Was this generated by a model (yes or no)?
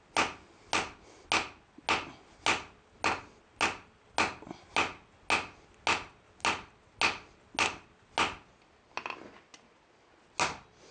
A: no